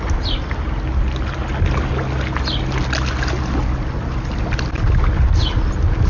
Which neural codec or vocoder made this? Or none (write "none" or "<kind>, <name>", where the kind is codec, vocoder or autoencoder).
none